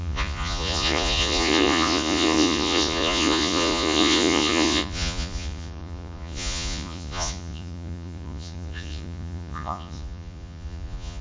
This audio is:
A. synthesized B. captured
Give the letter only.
A